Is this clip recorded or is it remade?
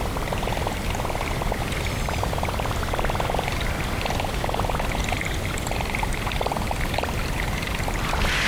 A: remade